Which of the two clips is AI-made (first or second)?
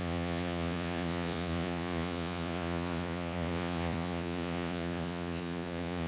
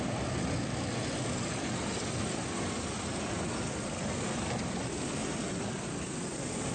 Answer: first